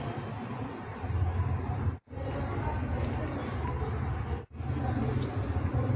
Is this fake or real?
real